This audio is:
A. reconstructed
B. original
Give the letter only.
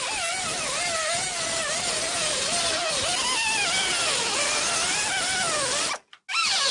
B